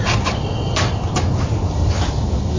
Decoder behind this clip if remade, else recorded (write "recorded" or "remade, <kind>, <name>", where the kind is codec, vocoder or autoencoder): recorded